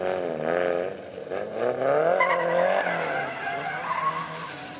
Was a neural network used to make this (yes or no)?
no